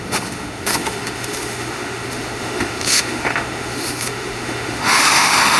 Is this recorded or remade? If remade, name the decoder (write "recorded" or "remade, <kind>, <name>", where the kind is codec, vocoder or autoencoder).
remade, autoencoder, DAC-VAE